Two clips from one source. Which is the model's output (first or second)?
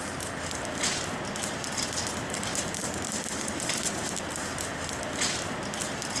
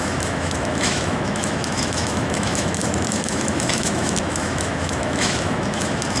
second